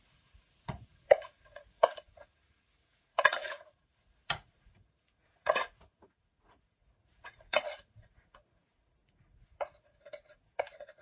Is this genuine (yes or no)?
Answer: no